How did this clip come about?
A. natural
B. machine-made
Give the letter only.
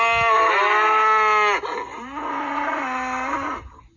A